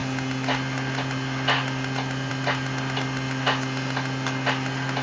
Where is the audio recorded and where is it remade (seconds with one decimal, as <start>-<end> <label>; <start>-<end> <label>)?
0.0-5.0 recorded